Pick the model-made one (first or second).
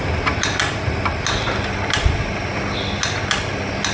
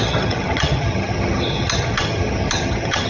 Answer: second